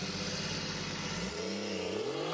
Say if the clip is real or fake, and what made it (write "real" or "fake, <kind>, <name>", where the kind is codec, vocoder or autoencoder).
real